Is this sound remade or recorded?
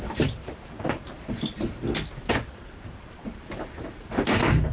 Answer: remade